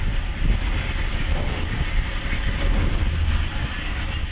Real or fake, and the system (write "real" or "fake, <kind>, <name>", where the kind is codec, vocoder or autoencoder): fake, vocoder, BigVGAN v2